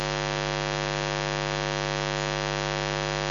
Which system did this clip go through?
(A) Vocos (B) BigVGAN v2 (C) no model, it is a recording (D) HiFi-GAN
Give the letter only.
C